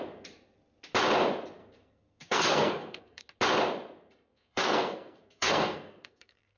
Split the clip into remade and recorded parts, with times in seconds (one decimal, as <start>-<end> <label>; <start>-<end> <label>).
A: 0.0-1.6 recorded; 1.6-3.2 remade; 3.2-4.3 recorded; 4.3-6.6 remade